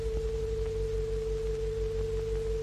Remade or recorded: recorded